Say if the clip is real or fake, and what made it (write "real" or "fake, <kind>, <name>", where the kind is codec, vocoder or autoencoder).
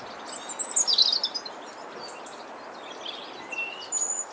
real